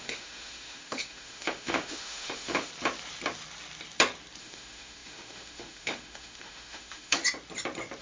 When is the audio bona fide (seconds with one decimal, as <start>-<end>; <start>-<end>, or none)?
2.7-4.4; 7.2-8.0